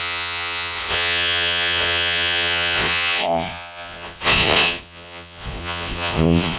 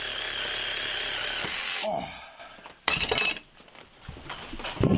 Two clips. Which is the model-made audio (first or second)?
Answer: first